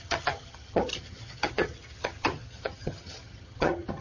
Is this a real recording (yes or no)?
no